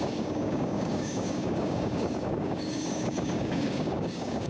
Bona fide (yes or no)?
no